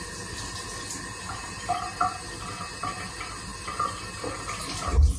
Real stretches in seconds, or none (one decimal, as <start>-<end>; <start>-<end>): 0.0-5.2